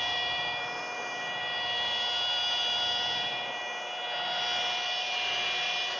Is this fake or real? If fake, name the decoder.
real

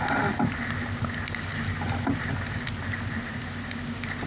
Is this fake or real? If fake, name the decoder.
real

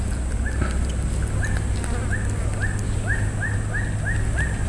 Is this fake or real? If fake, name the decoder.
real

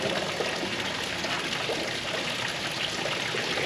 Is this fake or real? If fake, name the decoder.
real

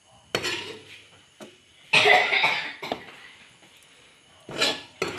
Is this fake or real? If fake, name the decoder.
real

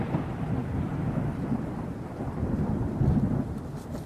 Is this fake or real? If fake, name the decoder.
fake, vocoder, BigVGAN v2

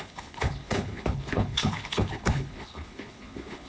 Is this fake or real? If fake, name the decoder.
fake, codec, HILCodec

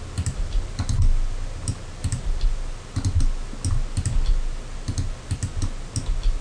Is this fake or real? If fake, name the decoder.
real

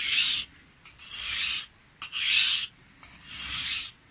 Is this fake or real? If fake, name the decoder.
real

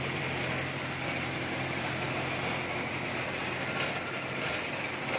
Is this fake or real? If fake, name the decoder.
real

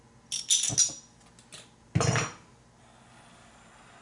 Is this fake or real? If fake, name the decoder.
real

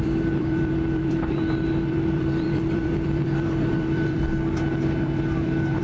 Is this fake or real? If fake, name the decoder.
fake, vocoder, BigVGAN v2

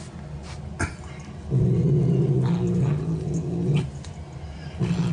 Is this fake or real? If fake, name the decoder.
real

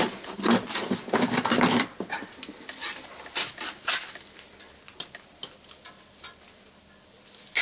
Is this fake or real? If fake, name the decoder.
real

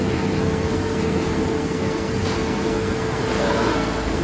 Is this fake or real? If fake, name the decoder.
fake, codec, SNAC